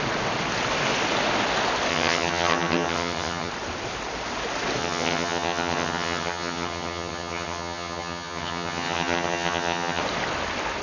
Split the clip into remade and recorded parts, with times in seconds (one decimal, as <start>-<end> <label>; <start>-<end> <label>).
0.0-1.9 recorded; 1.9-3.5 remade; 3.5-4.8 recorded; 4.8-10.0 remade; 10.0-10.8 recorded